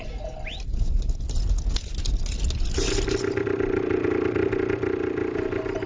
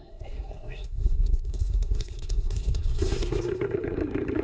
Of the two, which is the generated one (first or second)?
second